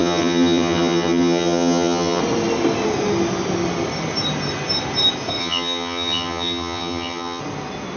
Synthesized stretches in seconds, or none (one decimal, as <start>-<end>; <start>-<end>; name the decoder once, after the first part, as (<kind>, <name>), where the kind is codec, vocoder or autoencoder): 0.0-2.2 (vocoder, HiFi-GAN); 5.4-7.4